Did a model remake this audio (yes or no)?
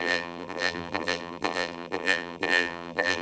yes